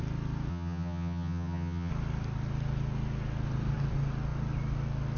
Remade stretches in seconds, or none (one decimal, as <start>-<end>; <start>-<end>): 0.5-1.9